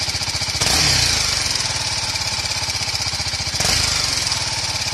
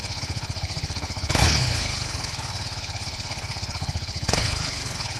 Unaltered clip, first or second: first